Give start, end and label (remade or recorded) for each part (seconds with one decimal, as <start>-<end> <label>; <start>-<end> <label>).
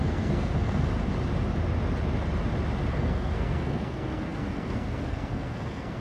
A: 0.0-0.9 remade; 0.9-2.9 recorded; 2.9-6.0 remade